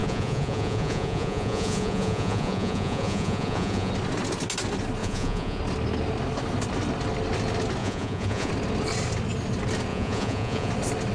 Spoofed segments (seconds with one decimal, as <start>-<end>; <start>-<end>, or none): 0.0-3.9; 5.0-5.6; 7.8-8.5; 9.9-10.7